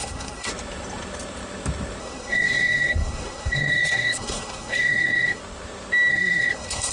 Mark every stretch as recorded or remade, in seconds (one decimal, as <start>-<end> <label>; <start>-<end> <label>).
0.0-0.5 remade; 0.5-2.0 recorded; 2.0-5.4 remade; 5.4-6.1 recorded; 6.1-6.9 remade